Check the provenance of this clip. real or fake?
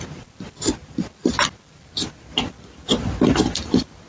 real